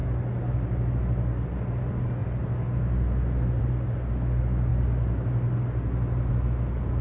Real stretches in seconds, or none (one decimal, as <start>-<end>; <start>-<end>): 0.0-7.0